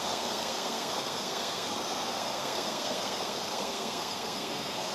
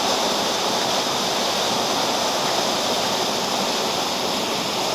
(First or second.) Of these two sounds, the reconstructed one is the first